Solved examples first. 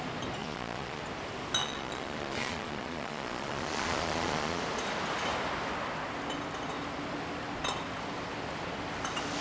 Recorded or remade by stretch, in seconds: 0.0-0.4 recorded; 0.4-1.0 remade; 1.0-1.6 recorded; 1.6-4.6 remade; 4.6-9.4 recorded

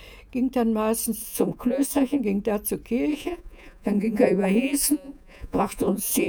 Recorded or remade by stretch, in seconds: 0.0-1.2 recorded; 1.2-2.2 remade; 2.2-3.1 recorded; 3.1-6.3 remade